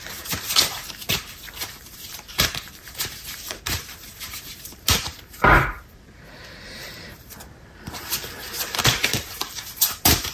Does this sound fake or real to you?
fake